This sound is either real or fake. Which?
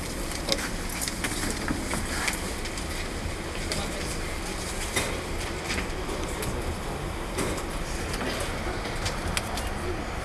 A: real